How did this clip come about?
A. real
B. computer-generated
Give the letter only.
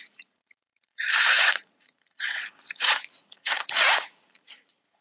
B